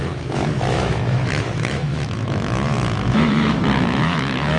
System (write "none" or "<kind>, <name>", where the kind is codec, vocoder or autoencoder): autoencoder, DAC-VAE